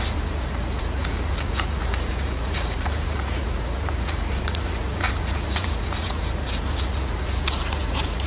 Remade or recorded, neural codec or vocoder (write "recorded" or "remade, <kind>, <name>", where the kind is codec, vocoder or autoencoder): remade, vocoder, Vocos